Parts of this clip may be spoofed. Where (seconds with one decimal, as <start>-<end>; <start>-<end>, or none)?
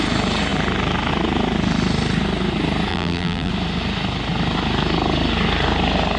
2.9-3.5